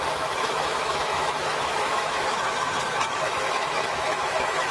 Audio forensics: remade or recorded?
remade